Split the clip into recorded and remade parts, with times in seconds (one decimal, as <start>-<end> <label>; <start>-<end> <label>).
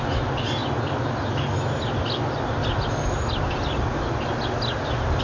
0.0-5.2 recorded